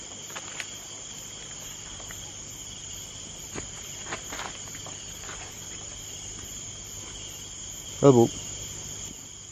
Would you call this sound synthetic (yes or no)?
no